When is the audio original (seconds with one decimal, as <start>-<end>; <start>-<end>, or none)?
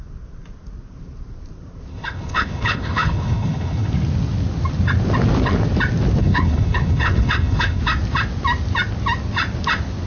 0.0-1.9; 3.9-6.2; 7.8-10.1